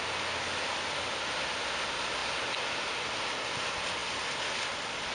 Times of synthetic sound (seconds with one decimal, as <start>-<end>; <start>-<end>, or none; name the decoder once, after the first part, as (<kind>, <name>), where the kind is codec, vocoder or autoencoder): none